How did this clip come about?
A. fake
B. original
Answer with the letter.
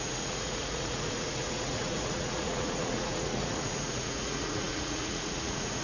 A